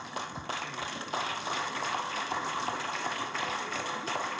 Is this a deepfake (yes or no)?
no